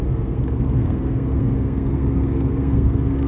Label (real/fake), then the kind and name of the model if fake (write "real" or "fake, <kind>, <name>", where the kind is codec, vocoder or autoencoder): fake, codec, SNAC